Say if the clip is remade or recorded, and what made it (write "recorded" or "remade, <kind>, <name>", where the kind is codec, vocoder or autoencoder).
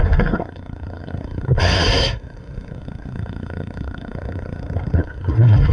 remade, codec, SNAC